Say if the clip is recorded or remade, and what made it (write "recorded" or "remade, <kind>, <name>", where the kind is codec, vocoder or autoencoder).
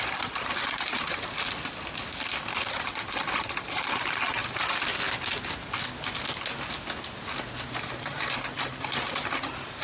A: recorded